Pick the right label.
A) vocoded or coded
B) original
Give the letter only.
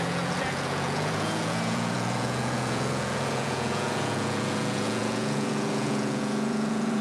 A